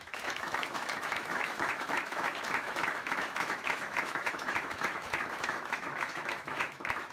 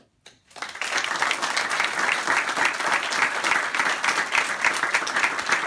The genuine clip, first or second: second